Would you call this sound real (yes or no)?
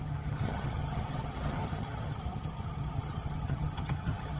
no